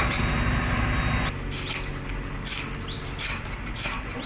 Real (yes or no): yes